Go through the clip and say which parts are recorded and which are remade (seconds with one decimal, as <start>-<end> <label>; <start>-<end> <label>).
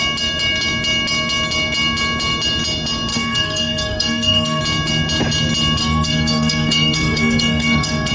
0.0-3.1 recorded; 3.1-4.6 remade; 4.6-5.8 recorded; 5.8-8.1 remade